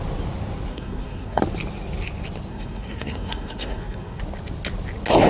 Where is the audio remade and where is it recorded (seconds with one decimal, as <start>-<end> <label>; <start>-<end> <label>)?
0.0-0.7 recorded; 0.7-1.4 remade; 1.4-2.5 recorded; 2.5-4.2 remade; 4.2-5.3 recorded